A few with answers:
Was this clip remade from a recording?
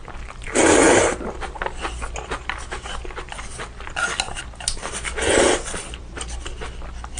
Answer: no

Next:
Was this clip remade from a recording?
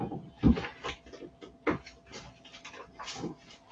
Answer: no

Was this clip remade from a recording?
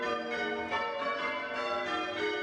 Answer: no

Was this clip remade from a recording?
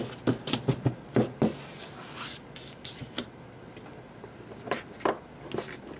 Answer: no